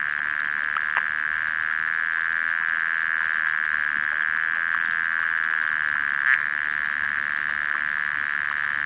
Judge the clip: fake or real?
real